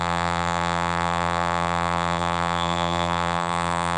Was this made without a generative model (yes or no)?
no